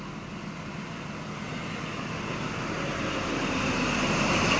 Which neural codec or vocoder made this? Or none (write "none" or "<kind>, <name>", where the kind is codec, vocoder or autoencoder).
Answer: none